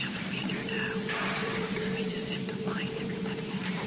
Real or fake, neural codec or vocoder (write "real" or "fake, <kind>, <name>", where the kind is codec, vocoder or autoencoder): fake, vocoder, BigVGAN v2